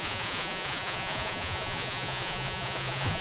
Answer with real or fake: fake